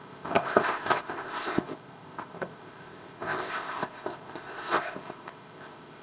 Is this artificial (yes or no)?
yes